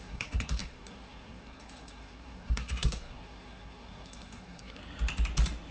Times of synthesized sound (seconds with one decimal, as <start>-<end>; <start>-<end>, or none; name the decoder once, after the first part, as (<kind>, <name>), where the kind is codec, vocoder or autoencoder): 0.0-4.8 (codec, SNAC)